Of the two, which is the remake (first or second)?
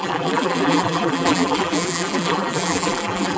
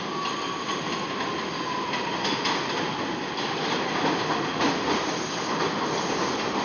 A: first